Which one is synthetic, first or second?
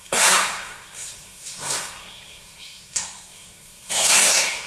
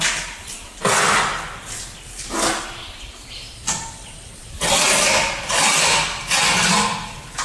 first